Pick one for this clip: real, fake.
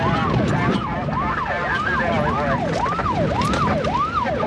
real